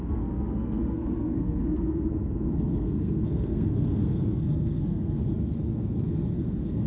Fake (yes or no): yes